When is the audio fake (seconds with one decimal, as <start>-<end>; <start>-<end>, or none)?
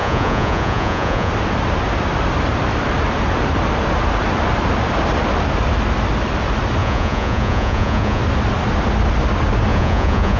0.0-1.3; 6.8-8.2; 9.7-10.4